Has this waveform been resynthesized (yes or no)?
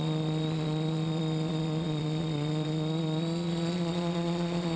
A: yes